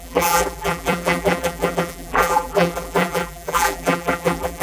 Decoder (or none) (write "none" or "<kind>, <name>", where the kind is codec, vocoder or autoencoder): vocoder, BigVGAN v2